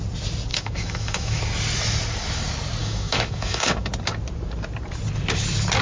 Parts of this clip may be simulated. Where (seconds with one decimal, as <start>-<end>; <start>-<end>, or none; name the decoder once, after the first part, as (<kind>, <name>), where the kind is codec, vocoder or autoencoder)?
0.5-1.4 (autoencoder, DAC-VAE); 2.8-3.9